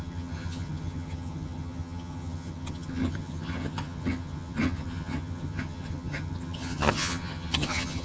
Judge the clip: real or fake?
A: fake